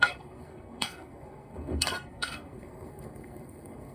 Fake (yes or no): yes